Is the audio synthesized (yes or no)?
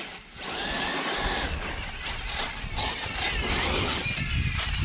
no